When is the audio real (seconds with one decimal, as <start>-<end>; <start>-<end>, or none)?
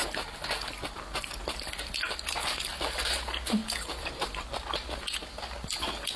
2.3-3.6; 4.1-6.2